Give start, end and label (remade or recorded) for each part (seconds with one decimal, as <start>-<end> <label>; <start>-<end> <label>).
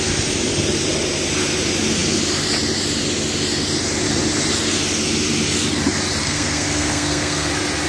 0.0-6.2 recorded; 6.2-7.5 remade; 7.5-7.9 recorded